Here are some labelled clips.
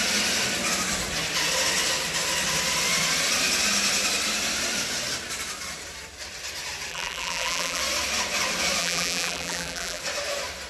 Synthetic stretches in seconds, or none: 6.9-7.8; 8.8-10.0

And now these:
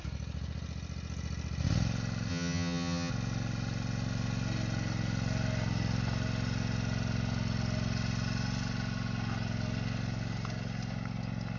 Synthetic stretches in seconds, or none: 2.3-3.1

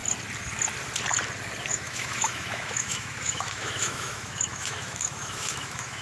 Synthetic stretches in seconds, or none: 1.7-6.0

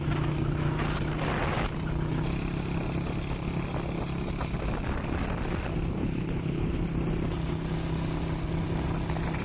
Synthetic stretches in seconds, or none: 6.0-6.8

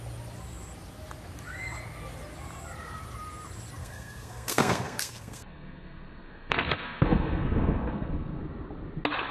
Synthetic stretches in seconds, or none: 3.8-8.4

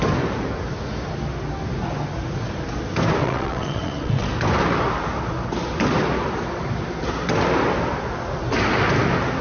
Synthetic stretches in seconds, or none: 3.2-4.3